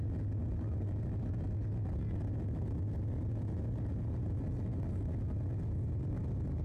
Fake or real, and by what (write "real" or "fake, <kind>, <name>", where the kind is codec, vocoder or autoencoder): real